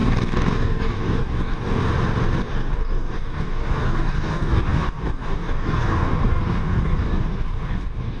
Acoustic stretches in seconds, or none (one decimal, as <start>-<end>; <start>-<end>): 1.8-2.4